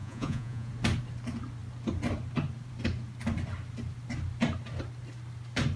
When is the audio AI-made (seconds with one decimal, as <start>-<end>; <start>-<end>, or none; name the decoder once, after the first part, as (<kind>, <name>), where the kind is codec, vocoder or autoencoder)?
0.0-0.7 (vocoder, Vocos)